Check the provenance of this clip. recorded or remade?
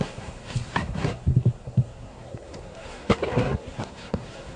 remade